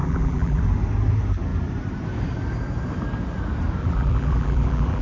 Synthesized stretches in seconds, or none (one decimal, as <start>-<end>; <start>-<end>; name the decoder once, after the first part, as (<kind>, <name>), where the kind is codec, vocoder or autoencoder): 0.0-0.6 (vocoder, BigVGAN v2); 3.8-5.0